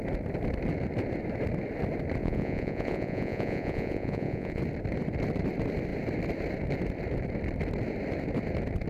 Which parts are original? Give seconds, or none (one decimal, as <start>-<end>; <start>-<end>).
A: 0.0-2.2; 4.6-8.9